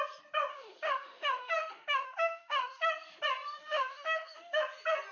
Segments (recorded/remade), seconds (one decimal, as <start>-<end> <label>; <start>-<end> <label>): 0.0-0.5 recorded; 0.5-2.9 remade; 2.9-3.6 recorded; 3.6-4.6 remade; 4.6-5.1 recorded